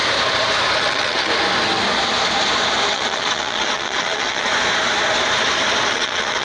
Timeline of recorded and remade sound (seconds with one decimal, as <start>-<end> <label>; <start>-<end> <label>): 0.0-0.8 recorded; 0.8-1.3 remade; 1.3-2.9 recorded; 2.9-4.5 remade; 4.5-5.9 recorded; 5.9-6.4 remade